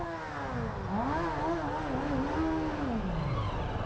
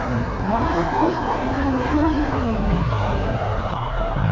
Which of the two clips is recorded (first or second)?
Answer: first